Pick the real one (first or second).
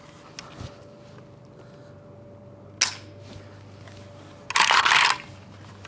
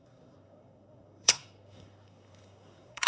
first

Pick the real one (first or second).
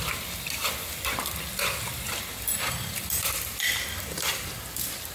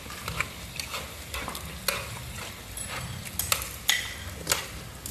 second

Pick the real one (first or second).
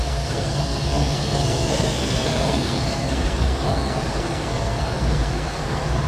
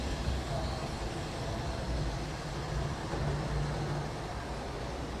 second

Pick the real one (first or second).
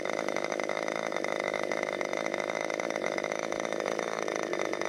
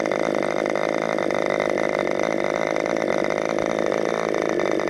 second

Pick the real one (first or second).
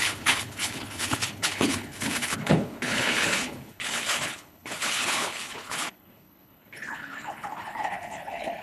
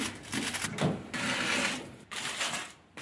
second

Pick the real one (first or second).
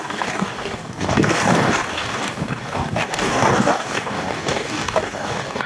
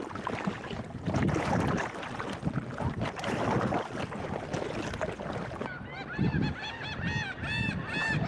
second